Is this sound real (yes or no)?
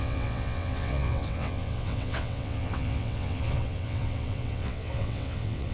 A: no